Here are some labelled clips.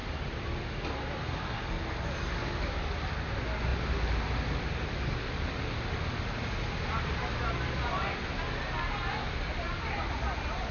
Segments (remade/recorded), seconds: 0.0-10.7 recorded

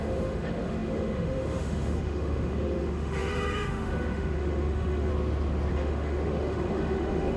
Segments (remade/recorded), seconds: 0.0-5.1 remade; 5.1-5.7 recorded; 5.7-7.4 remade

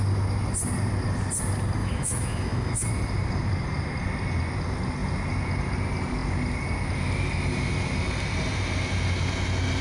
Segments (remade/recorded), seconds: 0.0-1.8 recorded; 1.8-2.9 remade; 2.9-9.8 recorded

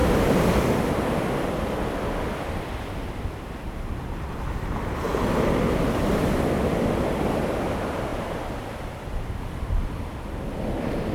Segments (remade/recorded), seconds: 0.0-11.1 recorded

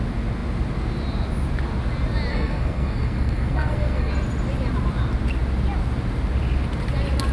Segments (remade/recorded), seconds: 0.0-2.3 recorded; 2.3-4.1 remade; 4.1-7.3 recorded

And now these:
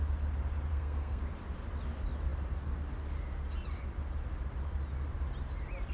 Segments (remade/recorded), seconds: 0.0-0.7 recorded; 0.7-1.2 remade; 1.2-5.9 recorded

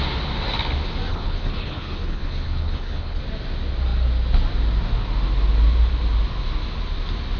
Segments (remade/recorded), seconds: 0.0-1.1 recorded; 1.1-3.2 remade; 3.2-7.4 recorded